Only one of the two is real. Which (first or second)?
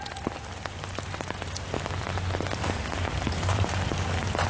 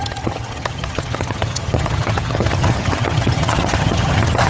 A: first